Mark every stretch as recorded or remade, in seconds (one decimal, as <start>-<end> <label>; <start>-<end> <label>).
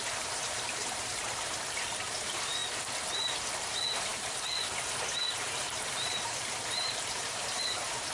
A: 0.0-2.6 remade; 2.6-3.4 recorded; 3.4-8.1 remade